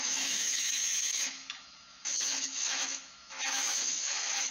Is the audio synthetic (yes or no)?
yes